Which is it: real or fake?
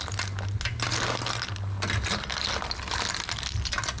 real